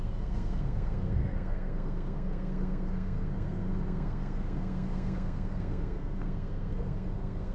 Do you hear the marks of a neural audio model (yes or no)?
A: yes